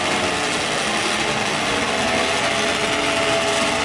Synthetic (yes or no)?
no